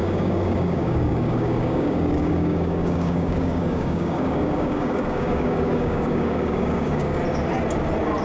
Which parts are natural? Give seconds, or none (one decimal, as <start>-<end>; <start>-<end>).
7.2-8.2